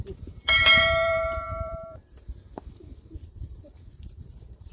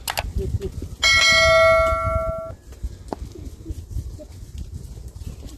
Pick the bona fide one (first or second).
second